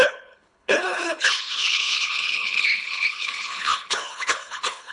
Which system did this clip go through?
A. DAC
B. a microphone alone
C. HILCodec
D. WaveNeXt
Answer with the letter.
C